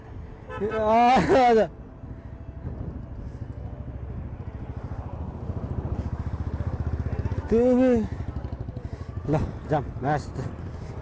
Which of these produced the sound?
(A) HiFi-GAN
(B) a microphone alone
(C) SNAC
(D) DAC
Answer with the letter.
B